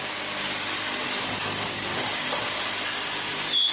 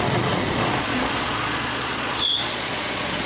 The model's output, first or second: second